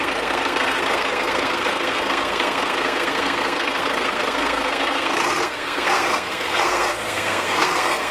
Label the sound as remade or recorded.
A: remade